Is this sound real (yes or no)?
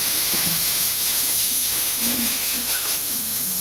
no